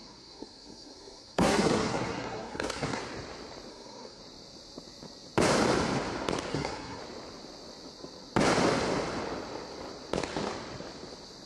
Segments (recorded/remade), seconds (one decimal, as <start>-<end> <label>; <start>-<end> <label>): 0.0-3.0 remade; 3.0-3.7 recorded; 3.7-4.2 remade; 4.2-6.5 recorded; 6.5-7.0 remade; 7.0-11.5 recorded